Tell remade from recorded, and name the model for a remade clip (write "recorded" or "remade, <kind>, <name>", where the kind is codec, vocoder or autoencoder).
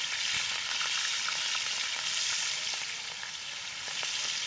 recorded